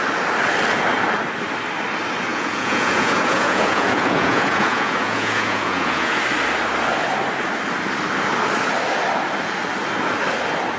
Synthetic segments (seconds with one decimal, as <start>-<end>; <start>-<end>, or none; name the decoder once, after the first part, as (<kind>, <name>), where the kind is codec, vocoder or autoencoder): 2.3-6.2 (vocoder, Vocos)